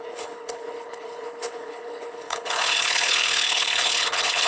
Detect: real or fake fake